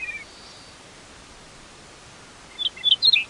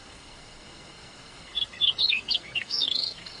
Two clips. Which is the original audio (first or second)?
first